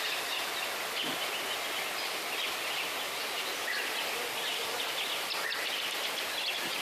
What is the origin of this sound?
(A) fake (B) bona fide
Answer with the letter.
B